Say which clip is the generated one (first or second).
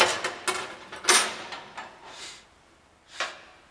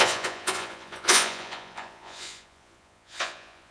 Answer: second